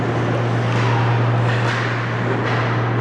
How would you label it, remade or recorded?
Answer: recorded